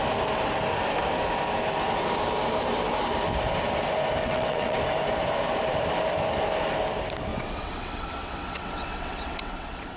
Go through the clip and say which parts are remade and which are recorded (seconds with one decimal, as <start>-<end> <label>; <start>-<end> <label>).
0.0-4.2 recorded; 4.2-4.8 remade; 4.8-7.3 recorded; 7.3-10.0 remade